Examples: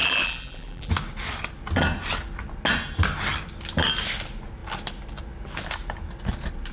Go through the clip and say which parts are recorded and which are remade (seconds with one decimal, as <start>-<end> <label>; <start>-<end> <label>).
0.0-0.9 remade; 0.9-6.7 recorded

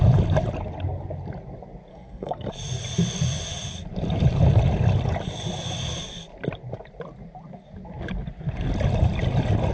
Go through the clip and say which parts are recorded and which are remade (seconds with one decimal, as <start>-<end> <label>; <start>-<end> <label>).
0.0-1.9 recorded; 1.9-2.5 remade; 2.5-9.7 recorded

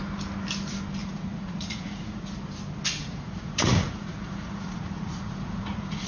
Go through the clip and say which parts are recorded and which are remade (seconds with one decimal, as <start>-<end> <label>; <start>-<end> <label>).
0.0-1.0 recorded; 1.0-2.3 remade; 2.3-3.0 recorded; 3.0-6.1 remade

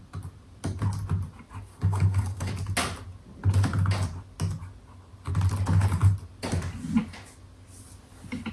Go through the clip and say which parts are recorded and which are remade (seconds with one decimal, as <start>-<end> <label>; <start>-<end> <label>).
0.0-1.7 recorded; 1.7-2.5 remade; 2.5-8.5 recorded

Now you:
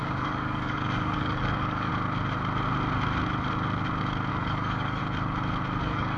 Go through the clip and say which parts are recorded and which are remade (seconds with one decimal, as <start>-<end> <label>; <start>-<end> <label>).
0.0-1.9 remade; 1.9-4.3 recorded; 4.3-5.0 remade; 5.0-5.8 recorded; 5.8-6.2 remade

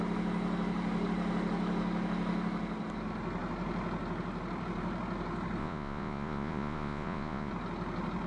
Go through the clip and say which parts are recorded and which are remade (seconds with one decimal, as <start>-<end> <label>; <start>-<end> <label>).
0.0-5.6 recorded; 5.6-7.5 remade; 7.5-8.3 recorded